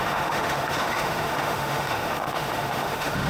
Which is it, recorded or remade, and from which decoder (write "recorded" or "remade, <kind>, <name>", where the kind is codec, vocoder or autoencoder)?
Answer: remade, autoencoder, DAC-VAE